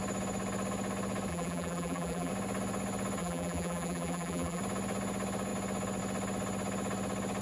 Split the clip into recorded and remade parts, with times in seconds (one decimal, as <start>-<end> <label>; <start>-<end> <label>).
0.0-1.3 recorded; 1.3-2.3 remade; 2.3-3.2 recorded; 3.2-4.6 remade; 4.6-7.4 recorded